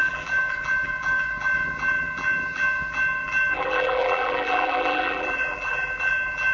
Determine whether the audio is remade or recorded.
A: remade